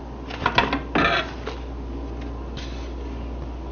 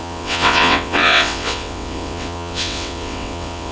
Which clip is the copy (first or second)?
second